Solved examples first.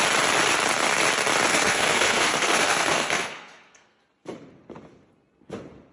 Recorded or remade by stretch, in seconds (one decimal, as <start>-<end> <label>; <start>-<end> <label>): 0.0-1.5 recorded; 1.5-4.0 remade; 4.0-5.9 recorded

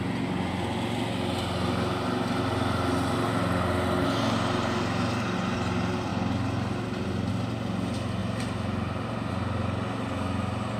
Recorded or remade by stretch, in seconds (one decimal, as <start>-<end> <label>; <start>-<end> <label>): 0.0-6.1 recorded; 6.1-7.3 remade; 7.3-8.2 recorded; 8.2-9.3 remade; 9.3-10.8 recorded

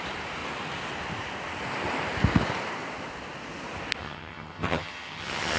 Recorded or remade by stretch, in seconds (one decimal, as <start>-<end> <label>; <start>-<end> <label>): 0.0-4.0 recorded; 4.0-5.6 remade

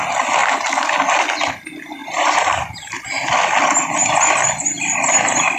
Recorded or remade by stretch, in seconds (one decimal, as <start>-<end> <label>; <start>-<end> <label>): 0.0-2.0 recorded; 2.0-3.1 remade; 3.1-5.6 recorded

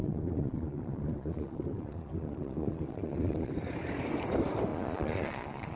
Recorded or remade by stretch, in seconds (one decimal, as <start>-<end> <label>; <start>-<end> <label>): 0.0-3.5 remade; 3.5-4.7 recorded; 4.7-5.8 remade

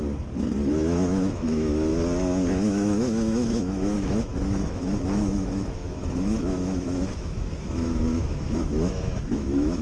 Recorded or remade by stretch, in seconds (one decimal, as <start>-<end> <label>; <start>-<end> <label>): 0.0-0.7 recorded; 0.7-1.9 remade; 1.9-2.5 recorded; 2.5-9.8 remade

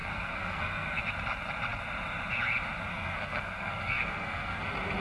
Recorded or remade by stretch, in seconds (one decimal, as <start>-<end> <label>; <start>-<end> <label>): 0.0-1.0 remade; 1.0-2.9 recorded; 2.9-4.6 remade; 4.6-5.0 recorded

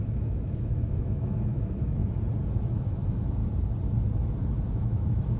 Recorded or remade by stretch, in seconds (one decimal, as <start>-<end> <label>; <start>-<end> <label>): 0.0-2.0 remade; 2.0-2.5 recorded; 2.5-3.4 remade; 3.4-4.7 recorded; 4.7-5.4 remade